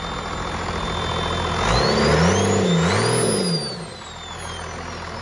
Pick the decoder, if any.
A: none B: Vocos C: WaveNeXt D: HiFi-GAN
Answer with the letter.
A